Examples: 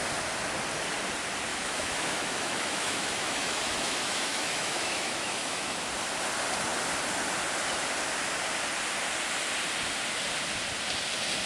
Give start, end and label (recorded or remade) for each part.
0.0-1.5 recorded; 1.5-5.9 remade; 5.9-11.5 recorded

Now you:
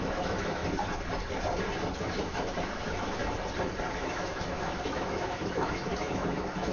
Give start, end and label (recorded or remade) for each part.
0.0-0.6 remade; 0.6-2.0 recorded; 2.0-3.2 remade; 3.2-3.9 recorded; 3.9-6.7 remade

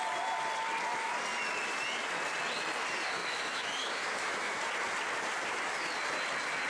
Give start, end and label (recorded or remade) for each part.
0.0-3.2 recorded; 3.2-4.5 remade; 4.5-6.7 recorded

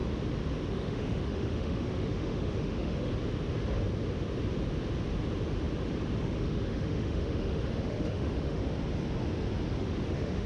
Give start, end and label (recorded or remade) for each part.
0.0-0.7 recorded; 0.7-3.1 remade; 3.1-6.2 recorded; 6.2-8.6 remade; 8.6-9.8 recorded; 9.8-10.5 remade

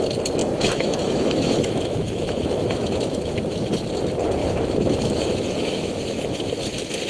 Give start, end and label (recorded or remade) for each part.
0.0-0.4 recorded; 0.4-3.7 remade; 3.7-4.4 recorded; 4.4-6.0 remade; 6.0-7.1 recorded

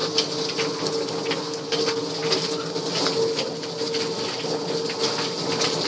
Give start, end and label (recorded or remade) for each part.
0.0-5.9 recorded

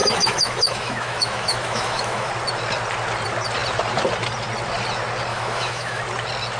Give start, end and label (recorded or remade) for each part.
0.0-2.3 remade; 2.3-5.3 recorded; 5.3-6.0 remade; 6.0-6.6 recorded